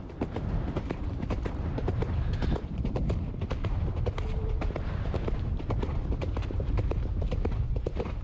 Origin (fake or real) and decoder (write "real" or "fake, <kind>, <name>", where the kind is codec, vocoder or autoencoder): fake, vocoder, BigVGAN v2